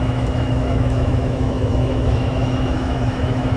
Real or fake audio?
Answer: fake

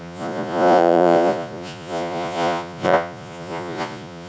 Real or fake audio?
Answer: fake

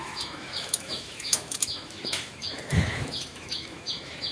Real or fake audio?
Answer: fake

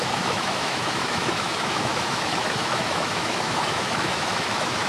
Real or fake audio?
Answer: fake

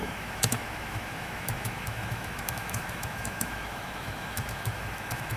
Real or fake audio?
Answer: fake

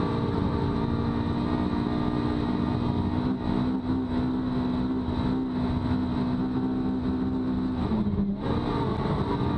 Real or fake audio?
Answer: real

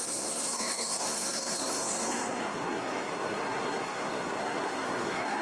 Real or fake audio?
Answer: fake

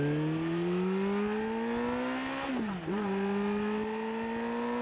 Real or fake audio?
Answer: real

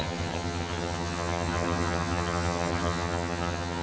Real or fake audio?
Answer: fake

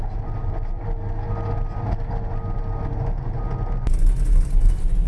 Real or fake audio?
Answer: real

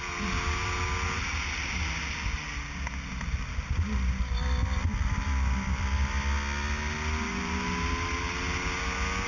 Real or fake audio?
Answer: real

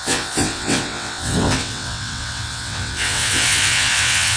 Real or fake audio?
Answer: fake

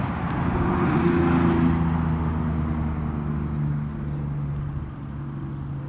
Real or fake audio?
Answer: real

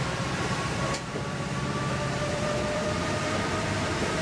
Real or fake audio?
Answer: fake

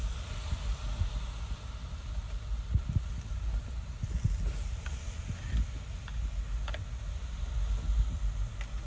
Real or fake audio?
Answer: real